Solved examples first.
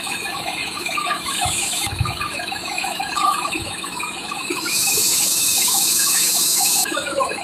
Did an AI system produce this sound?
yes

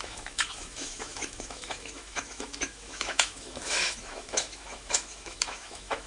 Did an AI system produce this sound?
yes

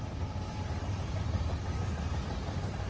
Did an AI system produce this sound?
no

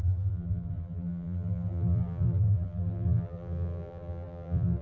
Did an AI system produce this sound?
yes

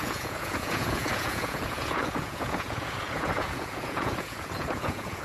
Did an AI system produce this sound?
yes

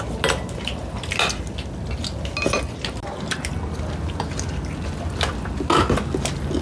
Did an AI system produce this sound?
no